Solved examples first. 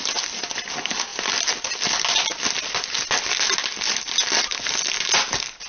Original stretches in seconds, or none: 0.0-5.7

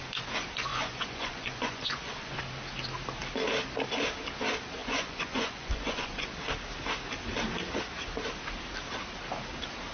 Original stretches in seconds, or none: 0.0-0.7; 2.4-4.8; 6.3-9.9

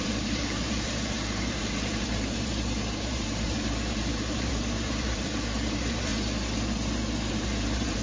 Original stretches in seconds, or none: 6.1-7.3

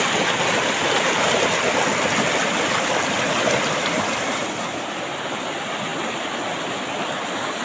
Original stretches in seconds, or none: 0.0-7.6

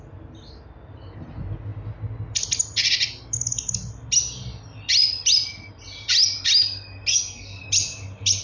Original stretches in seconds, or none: 0.0-7.1; 7.6-8.4

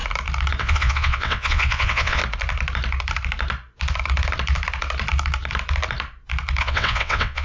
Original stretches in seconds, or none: 0.0-0.6; 2.2-6.6

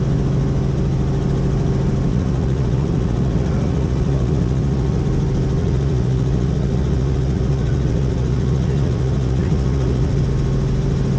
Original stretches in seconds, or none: 0.0-2.1; 5.0-5.6; 10.2-11.2